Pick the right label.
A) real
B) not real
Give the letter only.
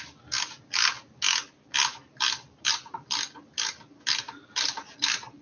A